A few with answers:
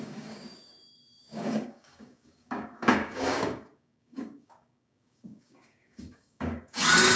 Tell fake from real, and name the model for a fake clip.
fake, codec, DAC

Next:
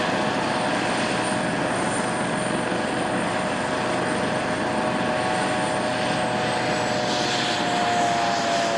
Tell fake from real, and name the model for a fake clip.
real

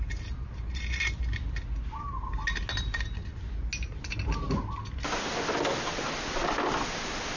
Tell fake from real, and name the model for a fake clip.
real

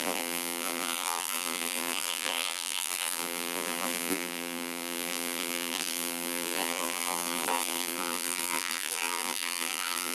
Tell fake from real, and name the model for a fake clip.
fake, vocoder, BigVGAN v2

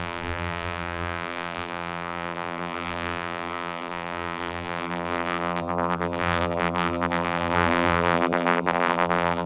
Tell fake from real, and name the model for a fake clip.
fake, vocoder, BigVGAN v2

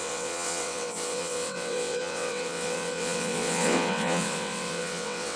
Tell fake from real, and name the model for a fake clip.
fake, vocoder, WaveNeXt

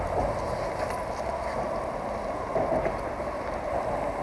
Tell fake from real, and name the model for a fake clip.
real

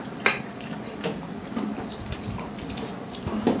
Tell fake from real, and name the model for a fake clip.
real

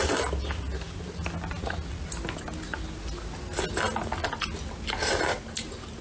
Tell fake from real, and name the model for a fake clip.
real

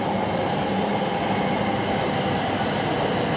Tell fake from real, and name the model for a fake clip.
real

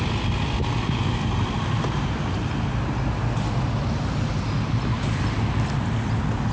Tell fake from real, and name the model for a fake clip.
real